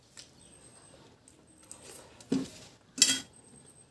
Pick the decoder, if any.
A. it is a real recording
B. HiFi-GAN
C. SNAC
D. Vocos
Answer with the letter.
A